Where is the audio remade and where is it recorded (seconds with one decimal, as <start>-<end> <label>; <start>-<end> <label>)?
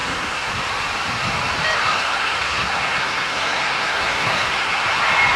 0.0-0.5 remade; 0.5-1.8 recorded; 1.8-5.0 remade; 5.0-5.4 recorded